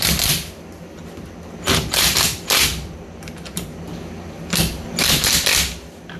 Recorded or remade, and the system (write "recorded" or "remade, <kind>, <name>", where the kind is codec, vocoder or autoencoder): remade, vocoder, BigVGAN v2